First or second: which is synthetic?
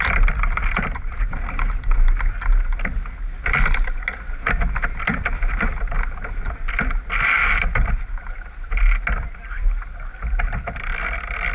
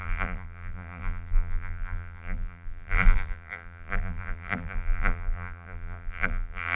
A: second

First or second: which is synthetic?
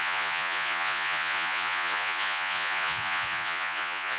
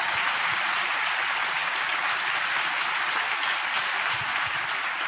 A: first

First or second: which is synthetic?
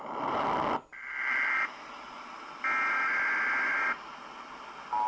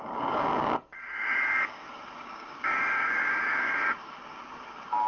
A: second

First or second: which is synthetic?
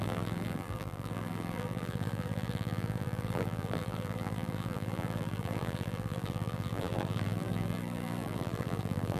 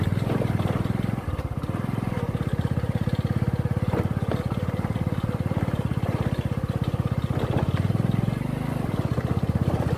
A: first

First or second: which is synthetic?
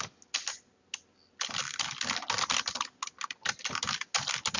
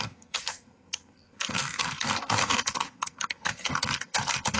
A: second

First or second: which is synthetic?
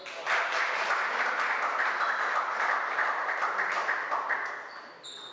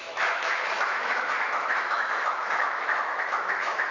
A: second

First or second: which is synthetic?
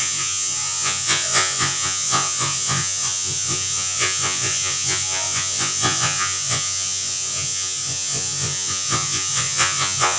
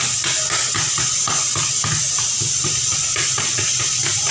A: first